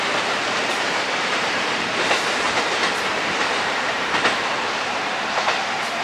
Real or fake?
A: fake